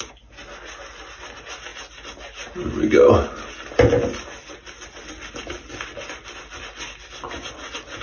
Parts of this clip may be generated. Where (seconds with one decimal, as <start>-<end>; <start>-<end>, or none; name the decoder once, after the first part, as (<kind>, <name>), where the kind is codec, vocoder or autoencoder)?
none